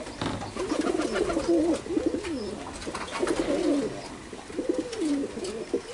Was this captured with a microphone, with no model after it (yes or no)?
yes